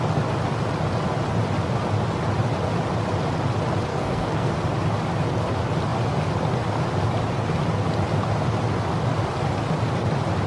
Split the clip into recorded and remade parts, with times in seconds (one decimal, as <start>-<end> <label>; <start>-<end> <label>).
0.0-3.9 recorded; 3.9-4.5 remade; 4.5-10.5 recorded